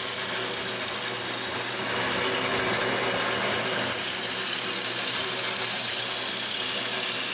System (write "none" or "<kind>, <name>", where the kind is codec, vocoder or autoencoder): none